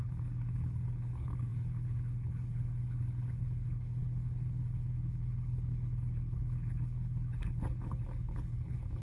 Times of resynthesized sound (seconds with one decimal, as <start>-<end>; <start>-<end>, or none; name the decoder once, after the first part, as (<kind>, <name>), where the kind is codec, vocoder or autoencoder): 0.0-9.0 (codec, HILCodec)